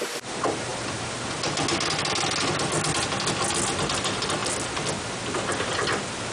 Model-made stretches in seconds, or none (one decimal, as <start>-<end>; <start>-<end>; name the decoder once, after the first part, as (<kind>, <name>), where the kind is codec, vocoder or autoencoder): none